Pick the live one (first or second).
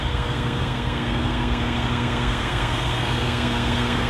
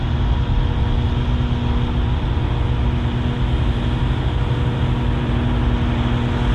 second